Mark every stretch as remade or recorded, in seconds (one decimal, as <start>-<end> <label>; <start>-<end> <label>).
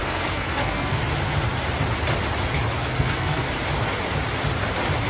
0.0-1.0 remade; 1.0-2.8 recorded; 2.8-3.5 remade; 3.5-5.1 recorded